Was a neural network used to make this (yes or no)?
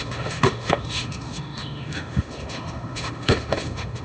yes